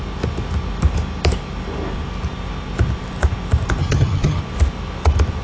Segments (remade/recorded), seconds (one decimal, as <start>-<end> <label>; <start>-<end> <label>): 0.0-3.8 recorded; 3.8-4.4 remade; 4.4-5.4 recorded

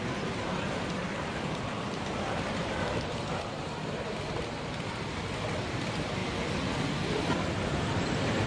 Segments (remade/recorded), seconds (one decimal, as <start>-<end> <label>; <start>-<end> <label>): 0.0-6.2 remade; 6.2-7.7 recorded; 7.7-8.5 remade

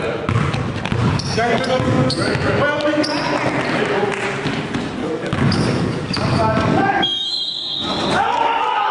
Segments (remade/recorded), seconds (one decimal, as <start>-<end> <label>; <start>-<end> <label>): 0.0-1.0 recorded; 1.0-2.1 remade; 2.1-5.0 recorded; 5.0-8.9 remade

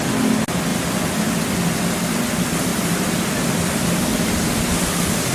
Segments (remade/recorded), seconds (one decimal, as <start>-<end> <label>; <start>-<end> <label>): 0.0-0.7 recorded; 0.7-1.4 remade; 1.4-2.7 recorded; 2.7-3.3 remade; 3.3-5.3 recorded